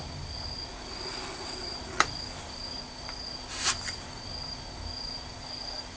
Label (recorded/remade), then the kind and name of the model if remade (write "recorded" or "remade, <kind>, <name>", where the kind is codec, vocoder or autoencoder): recorded